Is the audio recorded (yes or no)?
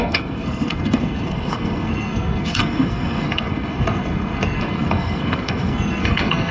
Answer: no